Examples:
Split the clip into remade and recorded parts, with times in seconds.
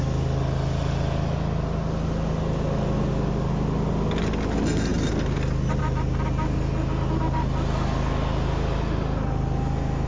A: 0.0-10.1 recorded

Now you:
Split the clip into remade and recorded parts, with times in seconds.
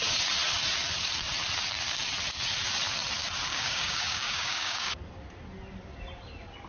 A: 0.0-3.5 recorded; 3.5-4.9 remade; 4.9-6.7 recorded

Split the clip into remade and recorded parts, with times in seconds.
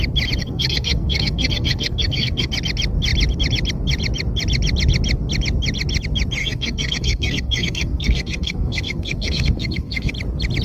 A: 0.0-0.4 recorded; 0.4-2.5 remade; 2.5-6.4 recorded; 6.4-10.1 remade; 10.1-10.6 recorded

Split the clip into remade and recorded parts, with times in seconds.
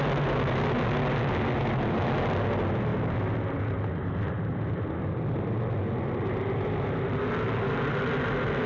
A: 0.0-8.7 recorded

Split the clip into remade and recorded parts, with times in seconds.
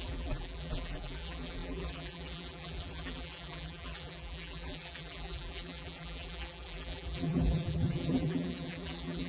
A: 0.0-9.3 remade